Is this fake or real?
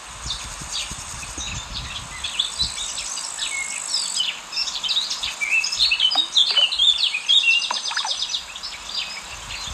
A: real